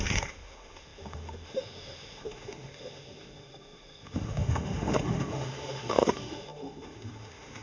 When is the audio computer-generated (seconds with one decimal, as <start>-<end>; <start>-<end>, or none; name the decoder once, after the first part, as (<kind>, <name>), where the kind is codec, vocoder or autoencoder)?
0.0-7.6 (autoencoder, DAC-VAE)